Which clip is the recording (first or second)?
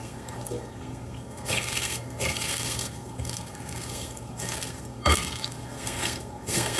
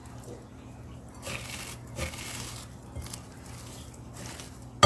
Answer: second